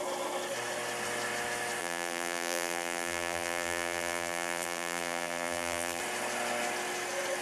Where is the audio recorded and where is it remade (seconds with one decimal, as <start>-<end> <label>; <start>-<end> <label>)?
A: 0.0-1.8 recorded; 1.8-6.0 remade; 6.0-7.4 recorded